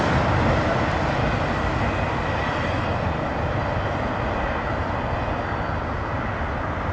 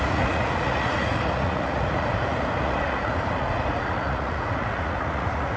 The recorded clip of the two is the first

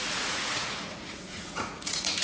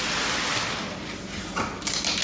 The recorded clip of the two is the second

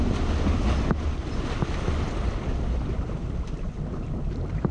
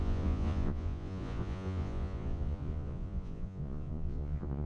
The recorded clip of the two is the first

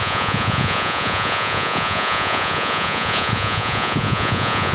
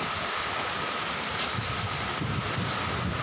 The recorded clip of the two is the second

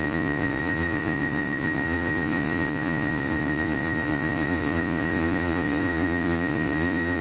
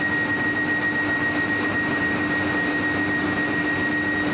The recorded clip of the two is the second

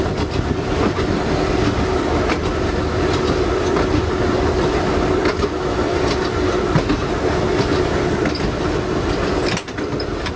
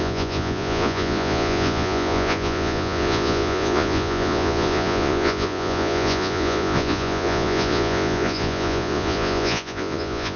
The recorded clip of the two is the first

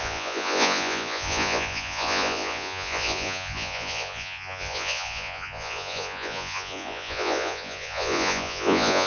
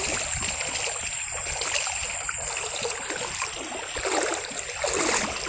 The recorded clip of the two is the second